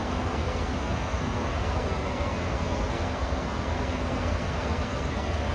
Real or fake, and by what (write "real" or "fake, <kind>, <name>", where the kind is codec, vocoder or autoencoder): fake, codec, SNAC